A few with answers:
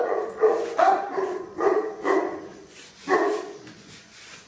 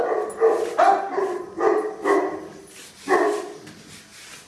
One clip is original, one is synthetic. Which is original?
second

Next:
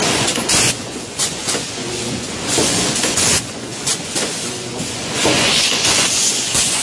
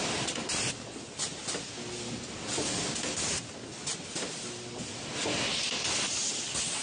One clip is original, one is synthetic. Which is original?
second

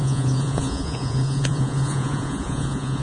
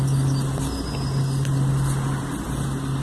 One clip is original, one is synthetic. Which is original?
second